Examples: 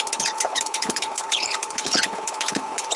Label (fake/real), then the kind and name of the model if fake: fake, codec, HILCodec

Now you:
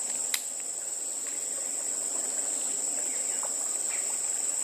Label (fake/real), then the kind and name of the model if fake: real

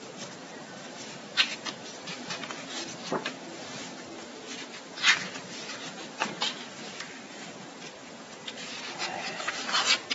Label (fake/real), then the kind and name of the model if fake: real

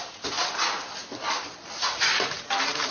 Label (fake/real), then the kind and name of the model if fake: real